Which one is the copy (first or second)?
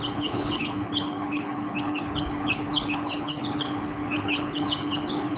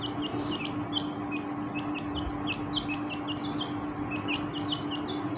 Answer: first